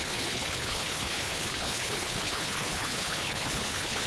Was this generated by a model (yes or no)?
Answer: yes